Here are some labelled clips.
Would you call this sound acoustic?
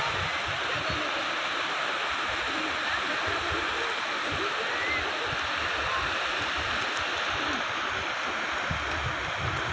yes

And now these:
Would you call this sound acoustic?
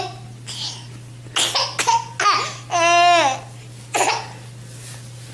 yes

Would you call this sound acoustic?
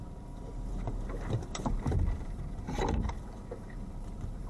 no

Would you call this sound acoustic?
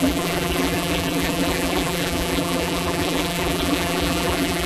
no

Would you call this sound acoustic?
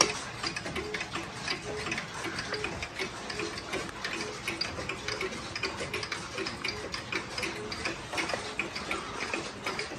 yes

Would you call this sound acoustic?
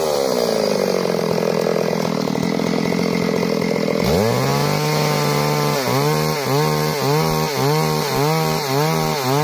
yes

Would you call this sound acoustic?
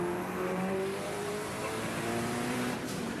no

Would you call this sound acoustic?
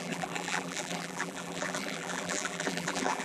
no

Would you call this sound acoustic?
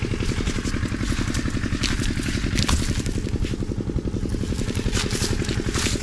yes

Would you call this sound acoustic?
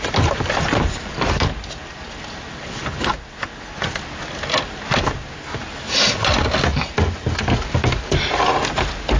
yes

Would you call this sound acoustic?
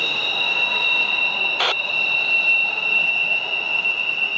yes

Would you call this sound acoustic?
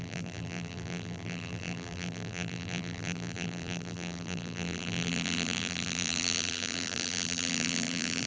no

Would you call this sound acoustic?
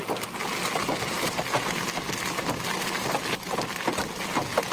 yes